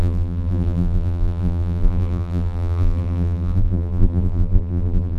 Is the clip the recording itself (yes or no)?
no